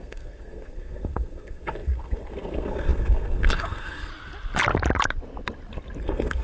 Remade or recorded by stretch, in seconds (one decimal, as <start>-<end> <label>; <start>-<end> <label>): 0.0-4.1 remade; 4.1-6.0 recorded; 6.0-6.4 remade

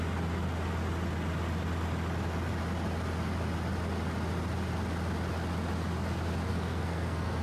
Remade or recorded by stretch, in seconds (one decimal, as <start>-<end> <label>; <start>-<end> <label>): 0.0-6.5 recorded; 6.5-7.4 remade

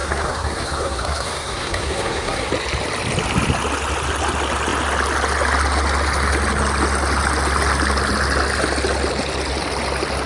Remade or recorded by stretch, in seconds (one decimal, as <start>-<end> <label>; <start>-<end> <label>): 0.0-2.5 remade; 2.5-10.3 recorded

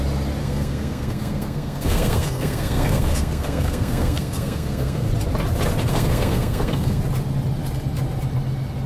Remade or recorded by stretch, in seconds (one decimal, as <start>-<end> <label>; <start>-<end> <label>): 0.0-0.4 recorded; 0.4-5.1 remade; 5.1-5.9 recorded; 5.9-7.0 remade; 7.0-8.9 recorded

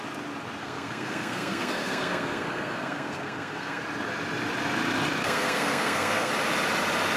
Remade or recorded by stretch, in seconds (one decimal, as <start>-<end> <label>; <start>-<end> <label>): 0.0-0.6 recorded; 0.6-3.8 remade; 3.8-5.2 recorded; 5.2-6.3 remade; 6.3-7.2 recorded

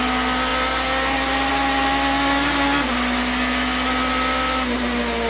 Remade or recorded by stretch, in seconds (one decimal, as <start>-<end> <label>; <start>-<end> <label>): 0.0-5.3 recorded